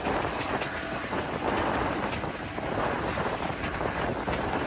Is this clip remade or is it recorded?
recorded